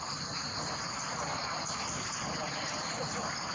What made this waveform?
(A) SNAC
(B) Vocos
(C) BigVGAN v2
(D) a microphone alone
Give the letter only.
D